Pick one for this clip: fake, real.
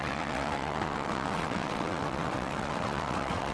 fake